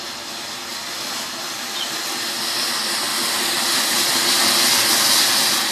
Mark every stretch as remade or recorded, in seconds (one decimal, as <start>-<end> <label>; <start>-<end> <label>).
0.0-0.7 recorded; 0.7-2.6 remade; 2.6-5.7 recorded